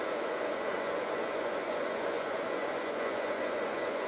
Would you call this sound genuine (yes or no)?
no